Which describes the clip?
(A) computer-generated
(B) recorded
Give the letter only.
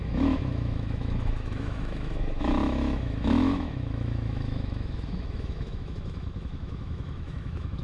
A